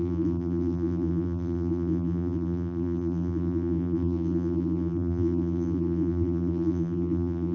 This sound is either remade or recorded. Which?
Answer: remade